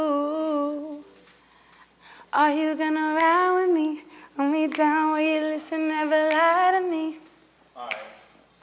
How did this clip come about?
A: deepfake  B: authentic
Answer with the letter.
B